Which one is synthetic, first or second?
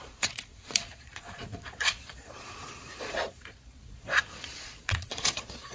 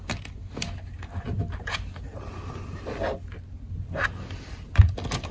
first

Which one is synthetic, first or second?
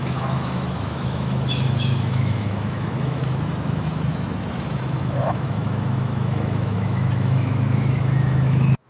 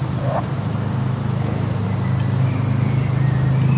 first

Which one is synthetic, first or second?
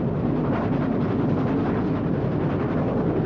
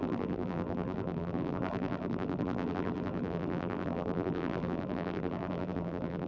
second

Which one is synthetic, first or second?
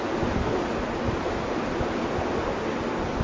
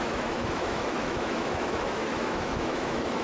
second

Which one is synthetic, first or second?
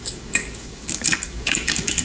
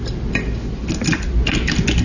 first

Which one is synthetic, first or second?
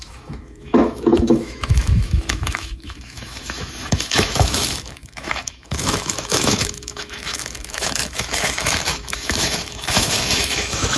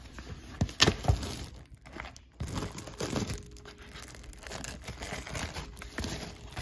first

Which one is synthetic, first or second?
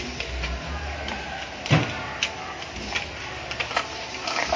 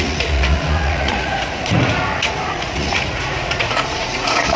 second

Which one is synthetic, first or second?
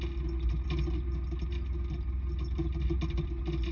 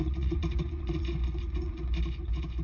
second